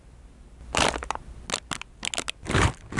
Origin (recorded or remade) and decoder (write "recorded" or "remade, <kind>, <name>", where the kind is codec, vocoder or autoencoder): recorded